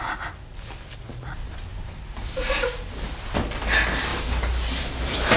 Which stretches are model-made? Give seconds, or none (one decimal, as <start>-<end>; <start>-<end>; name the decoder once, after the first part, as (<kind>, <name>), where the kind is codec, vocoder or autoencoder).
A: 1.7-2.5 (vocoder, BigVGAN v2); 4.1-5.4